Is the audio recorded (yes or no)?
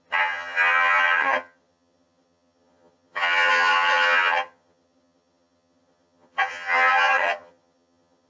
no